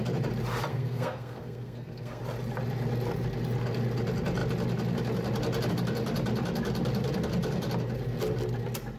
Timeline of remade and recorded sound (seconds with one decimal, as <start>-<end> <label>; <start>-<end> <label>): 0.0-0.7 recorded; 0.7-2.2 remade; 2.2-9.0 recorded